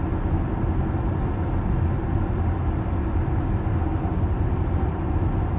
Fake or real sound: real